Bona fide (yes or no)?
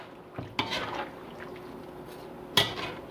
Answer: yes